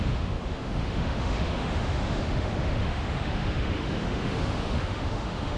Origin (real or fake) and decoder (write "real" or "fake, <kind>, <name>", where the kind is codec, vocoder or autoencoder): fake, autoencoder, DAC-VAE